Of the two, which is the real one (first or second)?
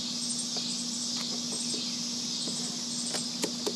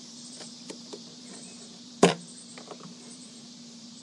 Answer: first